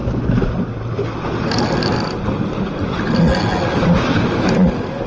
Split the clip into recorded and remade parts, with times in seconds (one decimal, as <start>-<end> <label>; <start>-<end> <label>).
0.0-5.1 recorded